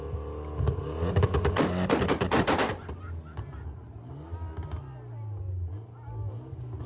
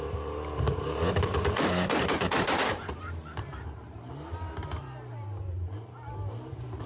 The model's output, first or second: second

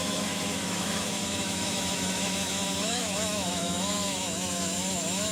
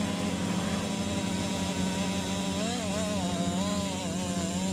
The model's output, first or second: first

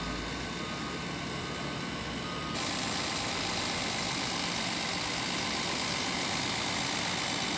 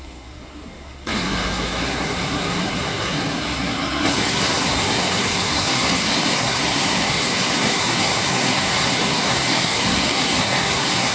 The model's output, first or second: second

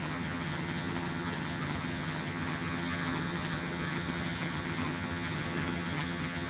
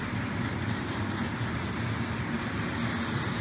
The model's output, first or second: first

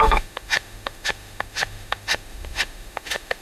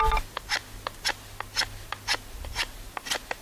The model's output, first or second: first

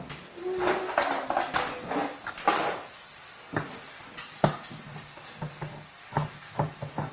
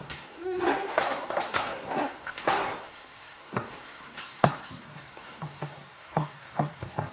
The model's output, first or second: second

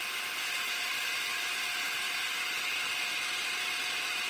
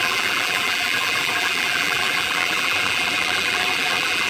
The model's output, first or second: second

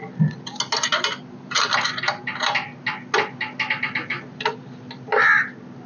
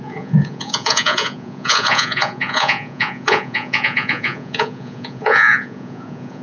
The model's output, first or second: second